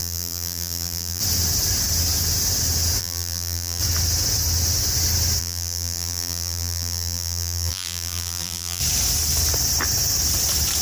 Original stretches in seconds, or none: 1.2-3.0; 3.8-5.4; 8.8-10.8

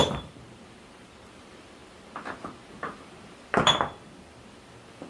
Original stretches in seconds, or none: 1.8-5.1

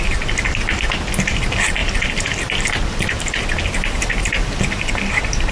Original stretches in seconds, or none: 0.0-5.5

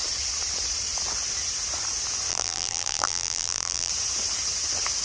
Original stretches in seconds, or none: 0.0-2.3; 3.9-5.0